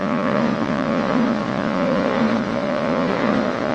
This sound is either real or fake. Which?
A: fake